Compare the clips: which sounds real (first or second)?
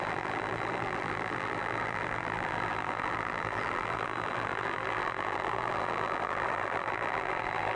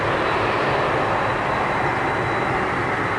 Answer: second